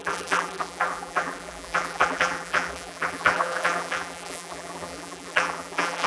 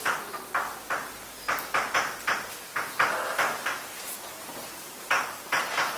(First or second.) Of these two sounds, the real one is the second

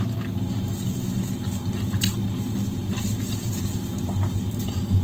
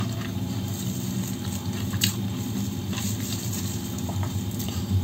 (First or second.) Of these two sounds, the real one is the first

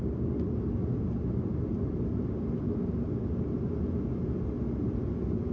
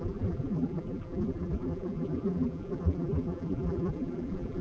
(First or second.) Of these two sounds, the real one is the first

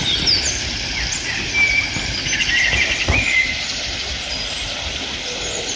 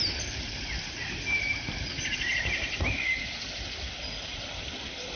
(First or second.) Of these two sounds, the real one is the first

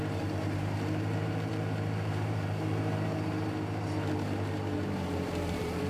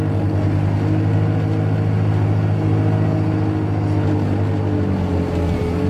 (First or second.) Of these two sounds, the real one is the second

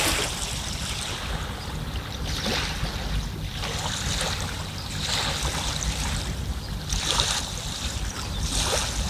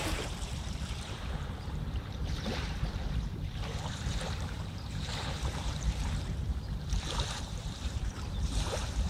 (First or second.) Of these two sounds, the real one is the first